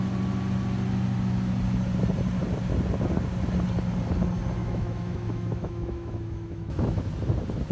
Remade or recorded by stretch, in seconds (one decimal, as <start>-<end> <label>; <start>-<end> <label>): 0.0-4.6 recorded; 4.6-7.0 remade; 7.0-7.7 recorded